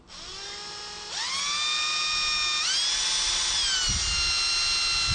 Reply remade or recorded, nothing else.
recorded